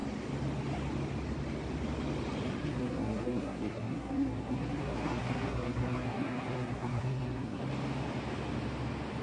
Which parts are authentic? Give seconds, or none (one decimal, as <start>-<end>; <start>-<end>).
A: 0.0-2.6; 7.6-9.2